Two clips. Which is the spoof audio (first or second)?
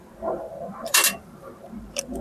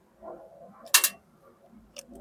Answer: first